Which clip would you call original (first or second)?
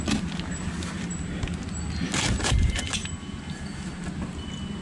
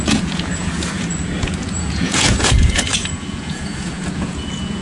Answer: first